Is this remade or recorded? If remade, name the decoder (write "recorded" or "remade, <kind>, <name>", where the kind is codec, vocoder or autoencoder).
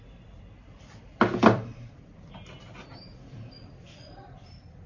remade, vocoder, BigVGAN v2